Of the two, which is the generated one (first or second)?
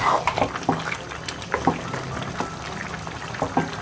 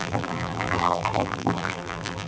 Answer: second